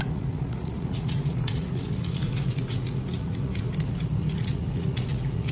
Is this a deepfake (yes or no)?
yes